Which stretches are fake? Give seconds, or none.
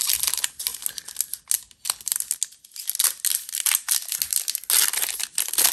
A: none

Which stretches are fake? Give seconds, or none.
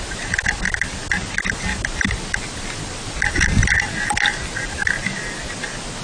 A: none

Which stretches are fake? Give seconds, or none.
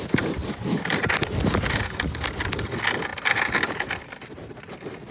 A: none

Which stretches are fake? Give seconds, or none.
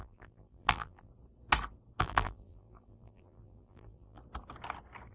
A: 0.0-1.1 (vocoder, BigVGAN v2); 2.0-4.2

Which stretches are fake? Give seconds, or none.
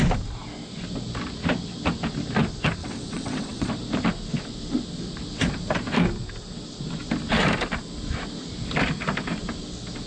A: 2.8-3.7 (vocoder, WaveNeXt)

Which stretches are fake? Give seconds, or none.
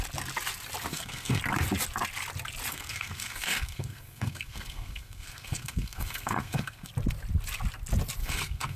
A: 0.9-1.4 (codec, SNAC); 2.7-6.9; 8.2-8.8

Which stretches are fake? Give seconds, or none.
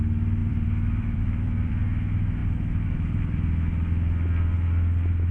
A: 0.4-1.7 (vocoder, BigVGAN v2)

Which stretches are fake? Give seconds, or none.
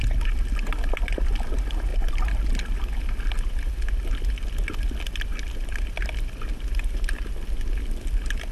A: none